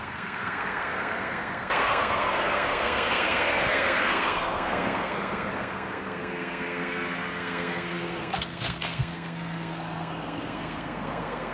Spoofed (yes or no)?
yes